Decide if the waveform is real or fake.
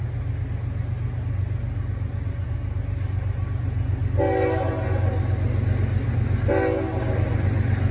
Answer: real